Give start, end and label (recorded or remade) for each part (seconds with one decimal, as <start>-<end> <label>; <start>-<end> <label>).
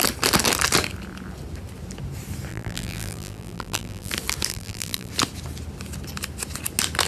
0.0-2.5 recorded; 2.5-4.1 remade; 4.1-4.5 recorded; 4.5-5.1 remade; 5.1-7.1 recorded